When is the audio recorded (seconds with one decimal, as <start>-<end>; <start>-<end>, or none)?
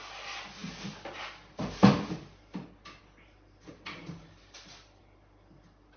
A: 0.0-6.0